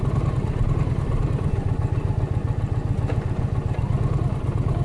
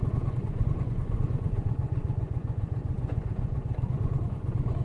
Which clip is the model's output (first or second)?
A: second